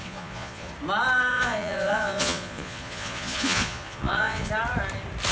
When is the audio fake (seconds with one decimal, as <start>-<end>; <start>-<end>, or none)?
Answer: 0.0-0.7; 1.3-4.5